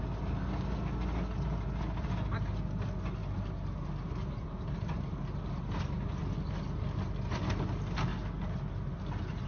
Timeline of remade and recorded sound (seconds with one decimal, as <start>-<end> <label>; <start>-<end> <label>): 0.0-9.5 recorded

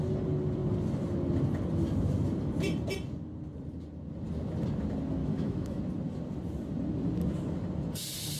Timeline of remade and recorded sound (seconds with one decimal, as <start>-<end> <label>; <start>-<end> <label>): 0.0-5.2 recorded; 5.2-5.8 remade; 5.8-8.4 recorded